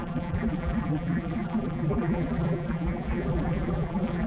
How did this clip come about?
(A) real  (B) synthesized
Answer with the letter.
B